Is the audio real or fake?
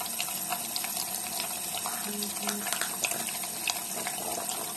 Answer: real